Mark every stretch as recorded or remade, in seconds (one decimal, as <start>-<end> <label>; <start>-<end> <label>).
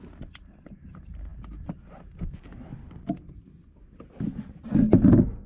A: 0.0-5.5 recorded